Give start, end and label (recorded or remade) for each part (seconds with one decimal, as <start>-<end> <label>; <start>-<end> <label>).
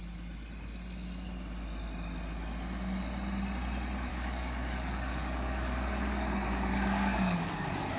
0.0-4.1 recorded; 4.1-8.0 remade